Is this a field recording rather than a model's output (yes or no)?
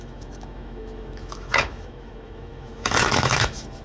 no